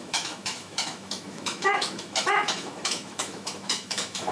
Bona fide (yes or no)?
no